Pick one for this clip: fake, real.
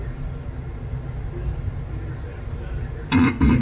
real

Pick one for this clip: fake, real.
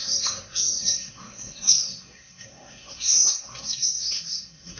fake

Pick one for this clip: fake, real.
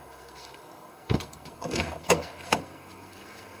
fake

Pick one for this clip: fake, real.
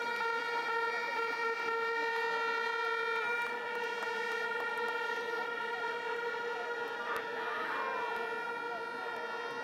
real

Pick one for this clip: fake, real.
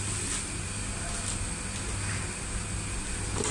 real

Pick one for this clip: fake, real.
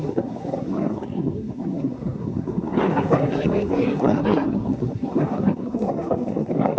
fake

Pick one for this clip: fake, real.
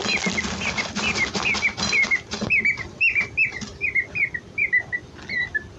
real